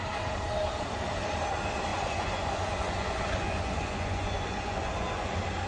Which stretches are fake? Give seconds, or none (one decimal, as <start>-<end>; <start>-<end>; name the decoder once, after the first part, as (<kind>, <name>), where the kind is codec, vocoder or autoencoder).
1.9-5.3 (vocoder, Vocos)